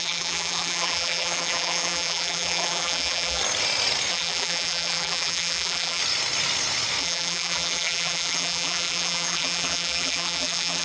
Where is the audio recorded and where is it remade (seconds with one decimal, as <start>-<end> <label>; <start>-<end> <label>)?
0.0-3.4 remade; 3.4-4.1 recorded; 4.1-6.0 remade; 6.0-7.0 recorded; 7.0-10.8 remade